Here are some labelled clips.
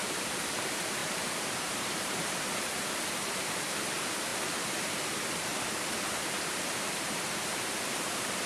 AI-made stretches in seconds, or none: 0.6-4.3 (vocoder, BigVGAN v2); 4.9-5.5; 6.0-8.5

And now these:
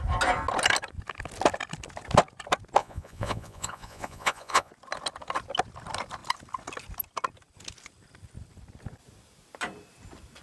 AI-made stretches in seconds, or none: 2.8-4.7 (vocoder, Vocos)

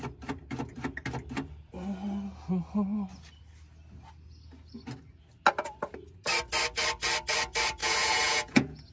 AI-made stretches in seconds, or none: 7.8-8.9 (vocoder, Vocos)

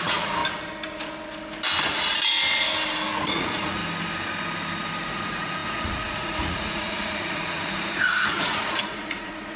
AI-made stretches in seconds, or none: 0.0-0.4 (vocoder, Vocos); 3.3-3.8; 5.1-9.6